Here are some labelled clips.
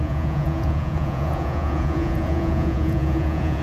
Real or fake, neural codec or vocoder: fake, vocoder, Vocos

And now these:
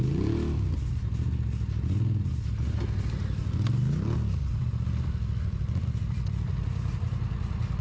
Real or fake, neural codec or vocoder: real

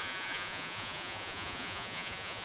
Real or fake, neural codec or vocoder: fake, vocoder, Vocos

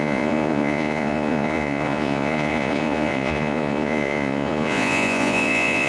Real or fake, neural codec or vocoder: fake, vocoder, Vocos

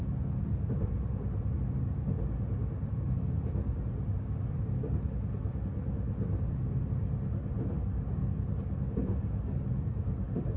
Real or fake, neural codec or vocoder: real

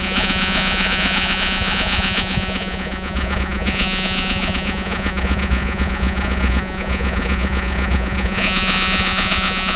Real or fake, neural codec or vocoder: fake, vocoder, Vocos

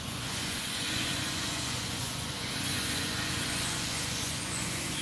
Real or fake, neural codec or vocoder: fake, vocoder, Vocos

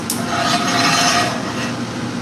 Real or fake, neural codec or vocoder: real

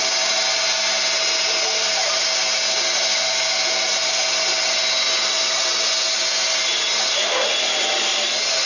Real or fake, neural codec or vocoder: real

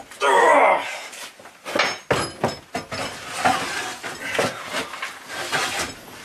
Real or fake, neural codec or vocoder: real